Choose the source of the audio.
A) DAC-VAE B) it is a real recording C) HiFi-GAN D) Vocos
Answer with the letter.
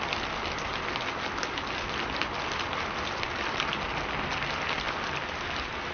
B